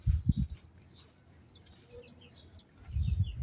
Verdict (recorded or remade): recorded